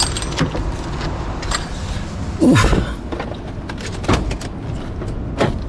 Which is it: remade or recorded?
recorded